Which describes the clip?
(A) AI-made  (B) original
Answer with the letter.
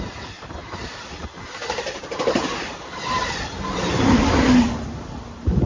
A